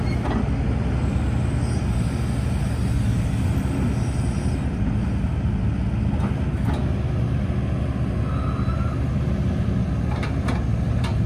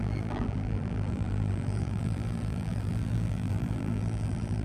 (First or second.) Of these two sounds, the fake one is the second